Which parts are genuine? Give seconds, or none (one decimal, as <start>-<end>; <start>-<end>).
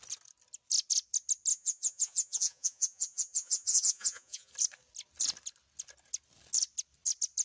0.0-1.5; 4.5-7.4